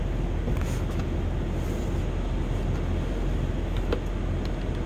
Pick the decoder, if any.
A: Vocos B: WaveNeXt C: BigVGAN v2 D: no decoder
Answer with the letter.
D